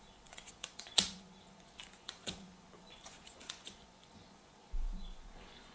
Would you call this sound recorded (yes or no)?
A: no